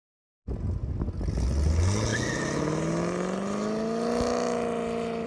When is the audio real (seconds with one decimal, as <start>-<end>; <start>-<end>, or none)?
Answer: 0.0-5.3

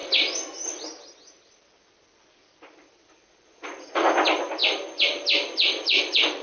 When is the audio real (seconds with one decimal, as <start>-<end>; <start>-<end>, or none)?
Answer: 0.0-6.4